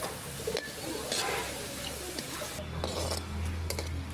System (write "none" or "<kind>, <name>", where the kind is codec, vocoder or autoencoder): none